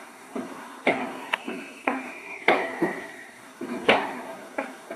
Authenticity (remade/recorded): remade